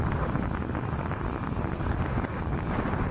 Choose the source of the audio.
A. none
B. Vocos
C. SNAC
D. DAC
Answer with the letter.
A